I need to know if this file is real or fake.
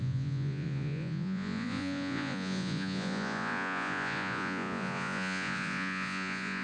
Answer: fake